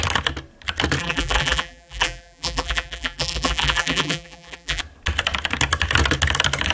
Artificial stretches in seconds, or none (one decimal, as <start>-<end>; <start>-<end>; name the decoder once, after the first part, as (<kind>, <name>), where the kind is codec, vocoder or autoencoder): 1.0-4.8 (vocoder, BigVGAN v2)